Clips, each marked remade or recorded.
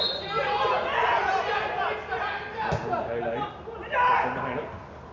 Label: recorded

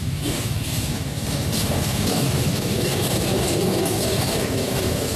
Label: remade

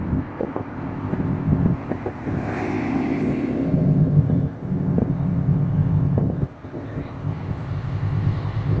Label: remade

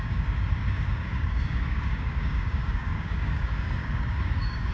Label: remade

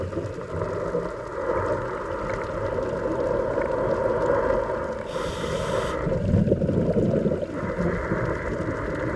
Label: recorded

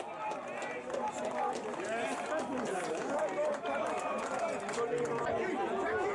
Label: recorded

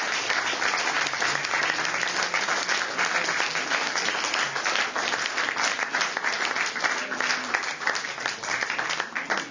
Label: recorded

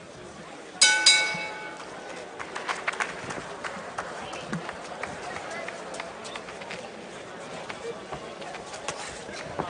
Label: recorded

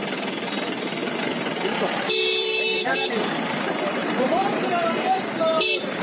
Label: remade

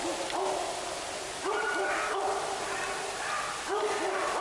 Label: recorded